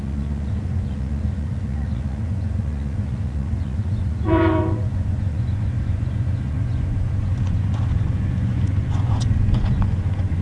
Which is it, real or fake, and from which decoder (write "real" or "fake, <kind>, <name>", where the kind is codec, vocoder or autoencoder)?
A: fake, vocoder, Vocos